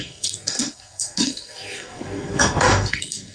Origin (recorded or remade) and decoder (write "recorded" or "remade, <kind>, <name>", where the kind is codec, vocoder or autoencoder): remade, codec, SNAC